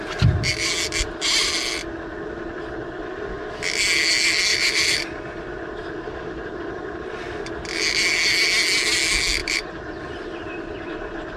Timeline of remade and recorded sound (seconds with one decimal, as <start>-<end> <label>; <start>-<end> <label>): 0.0-4.5 recorded; 4.5-5.0 remade; 5.0-9.4 recorded; 9.4-10.9 remade; 10.9-11.4 recorded